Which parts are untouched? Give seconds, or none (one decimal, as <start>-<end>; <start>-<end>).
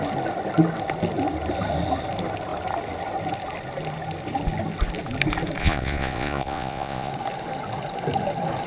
0.0-5.6; 7.1-8.7